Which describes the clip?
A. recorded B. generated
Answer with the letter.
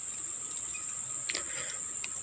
A